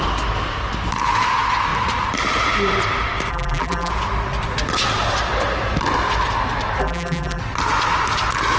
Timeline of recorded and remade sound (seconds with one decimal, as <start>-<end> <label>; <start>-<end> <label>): 0.0-3.3 recorded; 3.3-3.9 remade; 3.9-6.8 recorded; 6.8-7.4 remade; 7.4-8.6 recorded